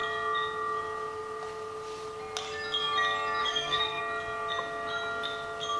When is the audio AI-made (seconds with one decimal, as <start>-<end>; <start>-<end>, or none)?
3.4-4.0